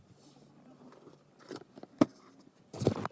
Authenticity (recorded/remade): recorded